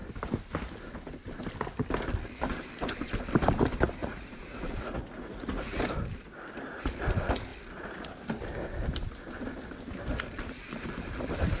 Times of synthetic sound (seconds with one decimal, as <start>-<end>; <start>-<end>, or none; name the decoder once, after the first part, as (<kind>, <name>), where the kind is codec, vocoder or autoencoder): 4.0-5.8 (vocoder, Vocos)